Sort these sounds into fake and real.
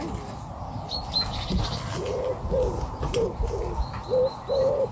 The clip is real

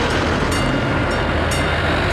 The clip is real